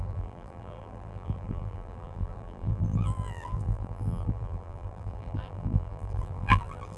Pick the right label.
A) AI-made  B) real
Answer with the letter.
A